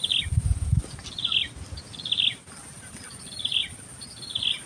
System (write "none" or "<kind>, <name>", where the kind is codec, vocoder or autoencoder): none